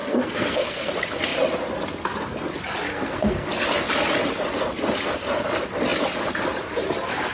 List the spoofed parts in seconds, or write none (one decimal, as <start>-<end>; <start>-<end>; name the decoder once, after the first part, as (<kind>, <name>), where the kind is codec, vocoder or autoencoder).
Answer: 0.0-0.9 (codec, SNAC); 2.9-3.5